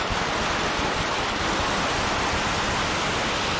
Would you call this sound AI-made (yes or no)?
no